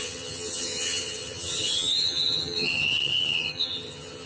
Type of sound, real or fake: fake